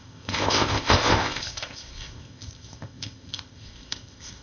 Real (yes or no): no